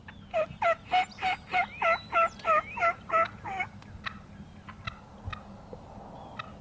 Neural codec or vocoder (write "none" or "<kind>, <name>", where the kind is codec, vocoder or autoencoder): none